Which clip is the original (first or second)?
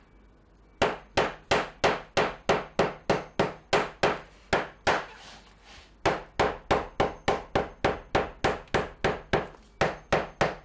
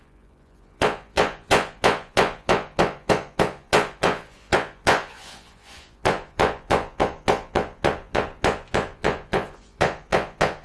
first